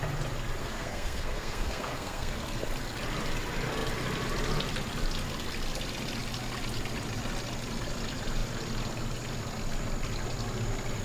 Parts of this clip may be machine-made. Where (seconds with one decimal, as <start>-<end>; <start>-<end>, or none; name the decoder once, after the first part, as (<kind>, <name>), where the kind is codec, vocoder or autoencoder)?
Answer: 0.6-2.4 (codec, SNAC)